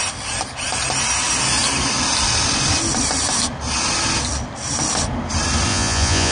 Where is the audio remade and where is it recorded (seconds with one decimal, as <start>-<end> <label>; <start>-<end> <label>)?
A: 0.0-5.7 recorded; 5.7-6.3 remade